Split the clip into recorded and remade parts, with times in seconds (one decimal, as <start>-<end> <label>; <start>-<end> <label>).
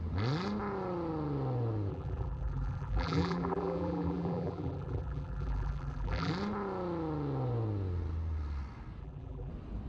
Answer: 0.0-1.9 recorded; 1.9-6.3 remade; 6.3-9.0 recorded; 9.0-9.5 remade; 9.5-9.9 recorded